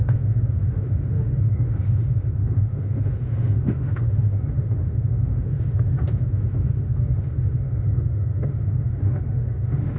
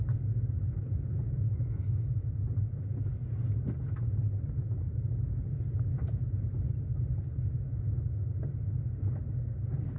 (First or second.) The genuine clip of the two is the second